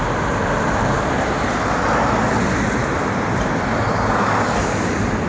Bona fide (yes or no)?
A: yes